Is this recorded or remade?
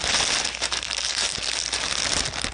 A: recorded